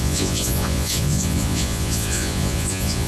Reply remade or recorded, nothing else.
remade